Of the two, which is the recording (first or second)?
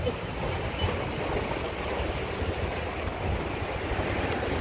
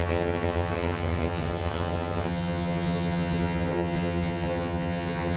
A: first